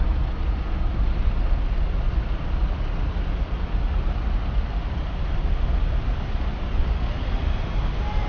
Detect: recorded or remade recorded